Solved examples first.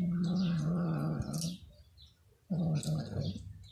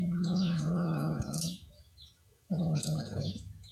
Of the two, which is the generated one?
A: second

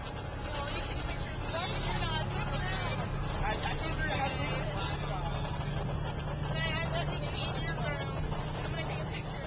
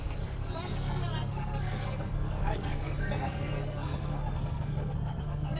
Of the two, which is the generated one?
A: second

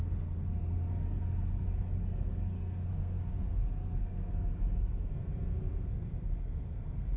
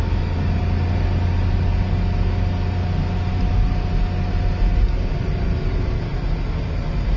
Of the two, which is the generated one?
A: first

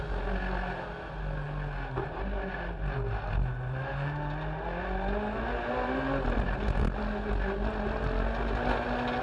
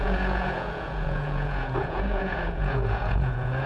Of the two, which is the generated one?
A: second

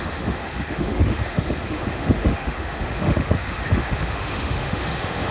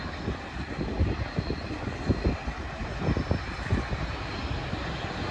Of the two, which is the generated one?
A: first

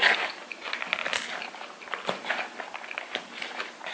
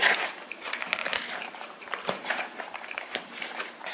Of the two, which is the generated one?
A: second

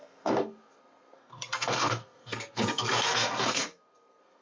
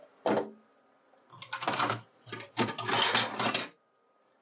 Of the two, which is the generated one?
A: first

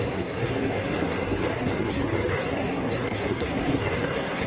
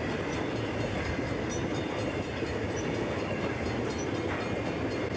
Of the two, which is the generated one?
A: first